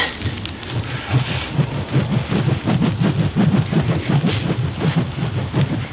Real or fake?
real